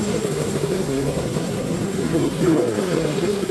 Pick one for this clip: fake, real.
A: fake